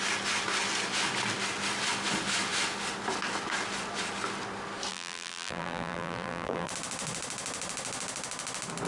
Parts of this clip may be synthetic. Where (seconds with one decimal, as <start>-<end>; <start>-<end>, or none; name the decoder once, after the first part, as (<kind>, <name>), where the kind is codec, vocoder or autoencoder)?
4.9-6.7 (vocoder, BigVGAN v2)